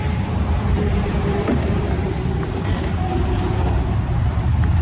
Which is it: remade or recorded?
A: remade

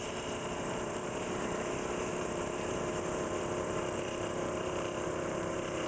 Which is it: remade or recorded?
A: remade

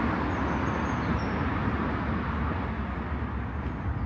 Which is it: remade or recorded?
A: recorded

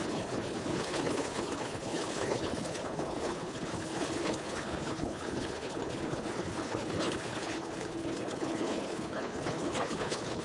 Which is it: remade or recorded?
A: remade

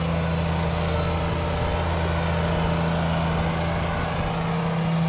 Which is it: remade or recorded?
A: recorded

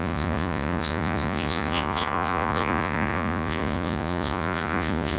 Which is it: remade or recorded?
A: remade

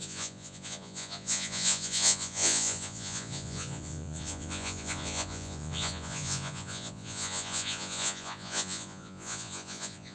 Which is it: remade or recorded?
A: remade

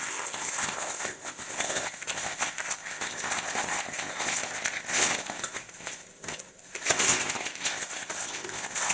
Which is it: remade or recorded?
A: remade